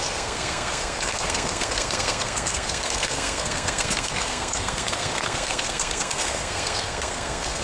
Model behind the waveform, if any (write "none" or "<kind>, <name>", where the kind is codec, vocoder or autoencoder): codec, SNAC